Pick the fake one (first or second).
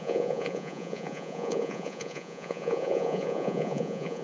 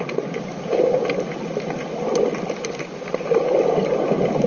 first